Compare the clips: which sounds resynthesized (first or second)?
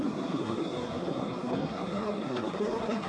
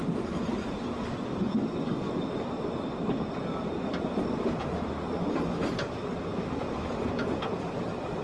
first